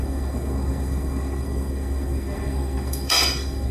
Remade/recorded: remade